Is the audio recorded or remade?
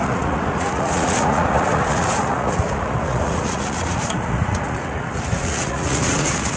remade